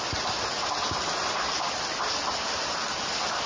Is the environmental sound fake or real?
real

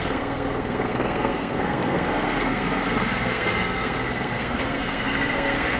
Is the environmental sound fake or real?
fake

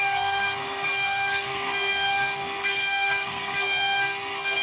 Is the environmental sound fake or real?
fake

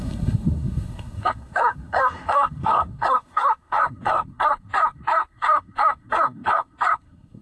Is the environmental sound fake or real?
fake